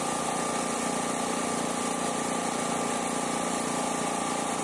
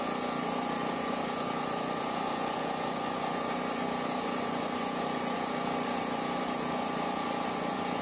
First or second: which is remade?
second